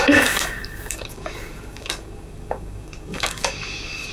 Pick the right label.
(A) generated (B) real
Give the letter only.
A